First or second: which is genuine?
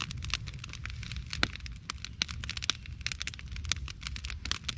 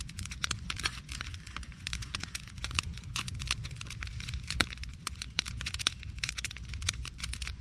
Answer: first